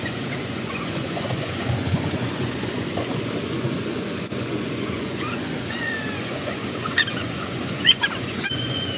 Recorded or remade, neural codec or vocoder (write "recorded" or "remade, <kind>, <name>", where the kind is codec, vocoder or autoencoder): remade, vocoder, Vocos